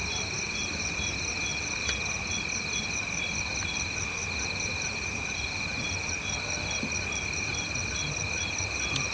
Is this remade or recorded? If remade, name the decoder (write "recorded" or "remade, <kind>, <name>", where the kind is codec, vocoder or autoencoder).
recorded